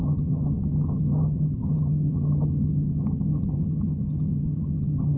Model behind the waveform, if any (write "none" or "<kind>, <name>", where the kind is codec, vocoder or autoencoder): vocoder, HiFi-GAN